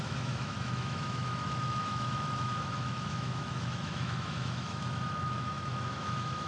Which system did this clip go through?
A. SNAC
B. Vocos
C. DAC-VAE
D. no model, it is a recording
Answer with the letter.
C